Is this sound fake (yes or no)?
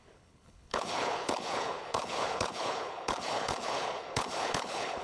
yes